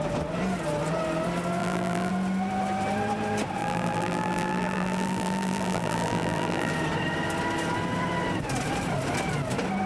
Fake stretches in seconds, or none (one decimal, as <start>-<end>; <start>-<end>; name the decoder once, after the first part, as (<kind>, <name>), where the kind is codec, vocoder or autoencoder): 1.6-2.1 (vocoder, BigVGAN v2); 3.6-6.7